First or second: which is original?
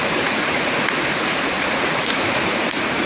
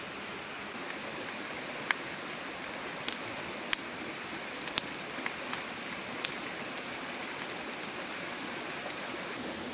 second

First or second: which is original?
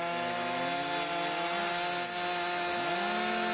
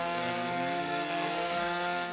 first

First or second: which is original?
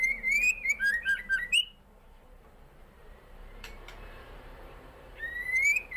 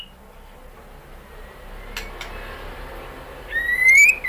second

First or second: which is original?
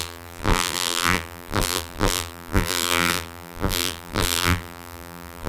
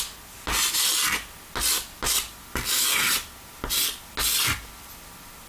second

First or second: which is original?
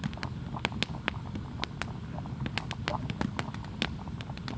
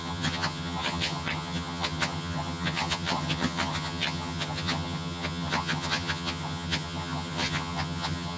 first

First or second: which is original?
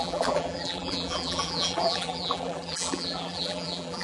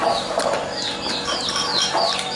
second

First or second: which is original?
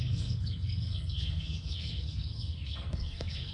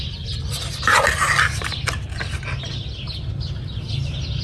second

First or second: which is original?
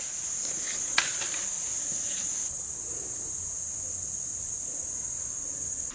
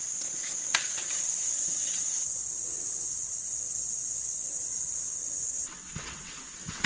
first